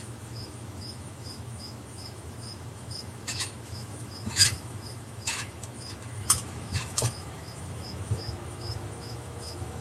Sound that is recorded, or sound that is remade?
remade